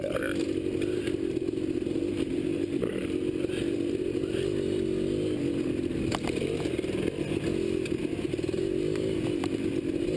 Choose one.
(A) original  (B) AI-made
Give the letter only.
A